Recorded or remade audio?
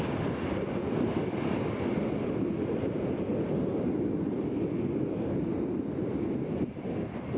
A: recorded